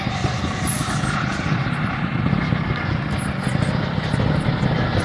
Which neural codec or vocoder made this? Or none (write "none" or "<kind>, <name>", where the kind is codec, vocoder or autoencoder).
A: none